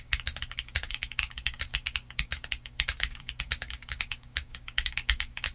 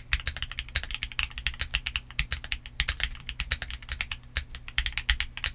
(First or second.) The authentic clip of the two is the second